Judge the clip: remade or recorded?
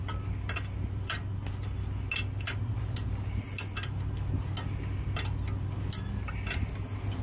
recorded